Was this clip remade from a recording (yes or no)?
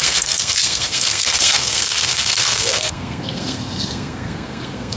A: yes